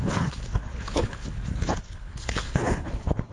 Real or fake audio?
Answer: fake